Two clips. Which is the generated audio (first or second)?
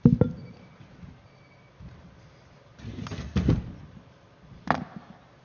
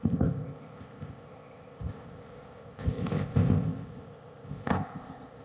second